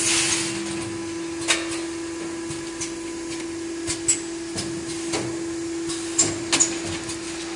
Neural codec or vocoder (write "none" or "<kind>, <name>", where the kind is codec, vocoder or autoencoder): none